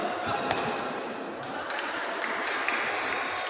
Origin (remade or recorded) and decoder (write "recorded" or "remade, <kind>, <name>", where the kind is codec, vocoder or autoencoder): recorded